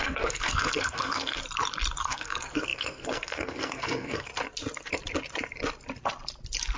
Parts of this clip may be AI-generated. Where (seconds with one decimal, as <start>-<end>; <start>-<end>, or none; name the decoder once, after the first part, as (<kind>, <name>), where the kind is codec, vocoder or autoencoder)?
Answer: 0.0-1.4 (codec, SNAC); 2.0-4.3